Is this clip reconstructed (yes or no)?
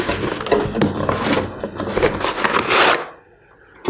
no